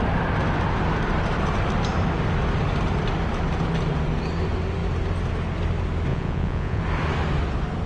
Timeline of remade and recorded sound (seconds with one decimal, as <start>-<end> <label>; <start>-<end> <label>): 0.0-6.1 recorded; 6.1-6.8 remade; 6.8-7.9 recorded